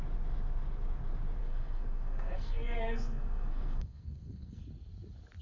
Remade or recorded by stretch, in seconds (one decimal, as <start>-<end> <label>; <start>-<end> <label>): 0.0-1.4 recorded; 1.4-4.6 remade; 4.6-5.4 recorded